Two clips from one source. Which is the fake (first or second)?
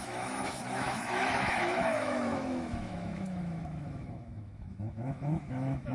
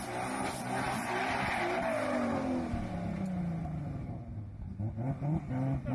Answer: first